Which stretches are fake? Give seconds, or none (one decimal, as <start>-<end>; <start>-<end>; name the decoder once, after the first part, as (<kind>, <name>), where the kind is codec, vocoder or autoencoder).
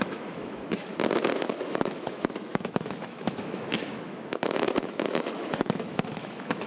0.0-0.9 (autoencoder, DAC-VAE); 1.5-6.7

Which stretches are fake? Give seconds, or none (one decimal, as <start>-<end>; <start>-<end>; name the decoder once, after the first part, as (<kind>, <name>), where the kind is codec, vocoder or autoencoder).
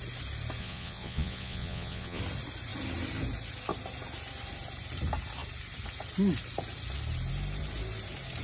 0.6-2.2 (vocoder, Vocos)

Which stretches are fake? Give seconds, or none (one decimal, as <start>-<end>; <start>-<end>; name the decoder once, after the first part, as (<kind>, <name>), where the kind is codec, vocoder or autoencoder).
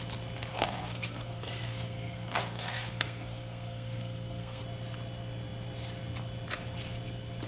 0.5-4.6 (codec, SNAC)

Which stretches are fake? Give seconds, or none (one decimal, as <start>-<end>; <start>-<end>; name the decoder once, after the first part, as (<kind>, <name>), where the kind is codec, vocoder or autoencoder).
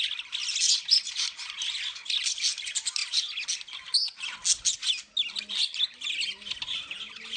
none